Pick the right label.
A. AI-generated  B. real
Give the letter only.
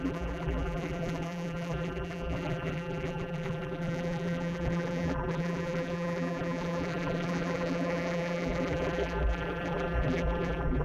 A